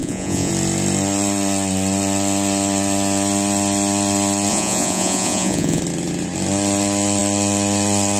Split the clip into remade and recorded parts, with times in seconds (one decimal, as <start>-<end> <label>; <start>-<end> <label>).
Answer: 0.0-0.5 remade; 0.5-4.5 recorded; 4.5-5.8 remade; 5.8-8.2 recorded